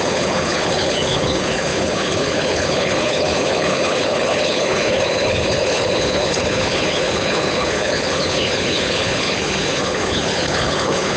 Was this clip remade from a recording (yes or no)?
yes